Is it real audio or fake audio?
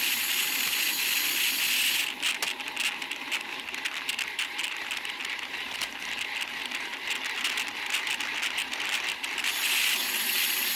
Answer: real